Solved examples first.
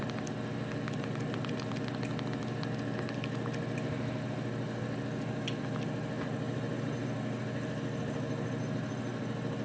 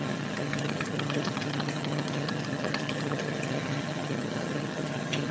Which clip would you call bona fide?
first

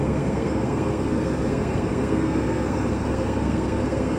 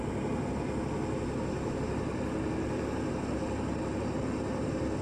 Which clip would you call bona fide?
second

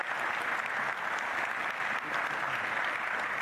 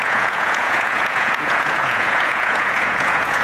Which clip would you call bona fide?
first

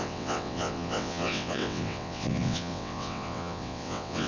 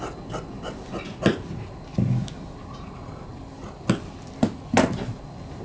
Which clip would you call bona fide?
second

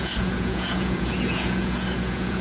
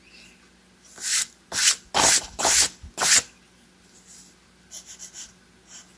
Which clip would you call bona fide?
second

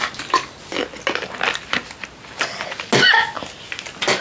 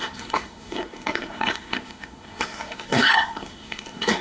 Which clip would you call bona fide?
first